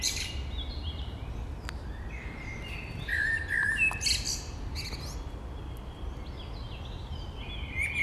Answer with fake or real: real